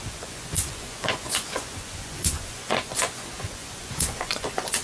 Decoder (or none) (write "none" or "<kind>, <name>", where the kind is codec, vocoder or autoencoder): vocoder, Vocos